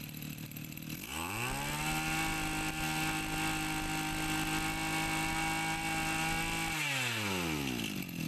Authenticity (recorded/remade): recorded